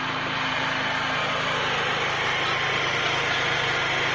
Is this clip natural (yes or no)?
yes